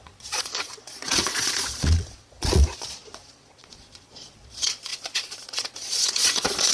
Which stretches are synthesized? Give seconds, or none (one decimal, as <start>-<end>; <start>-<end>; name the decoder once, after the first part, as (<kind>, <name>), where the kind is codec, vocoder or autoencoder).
0.0-6.7 (vocoder, Vocos)